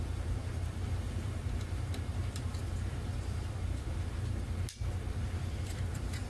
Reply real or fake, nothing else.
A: fake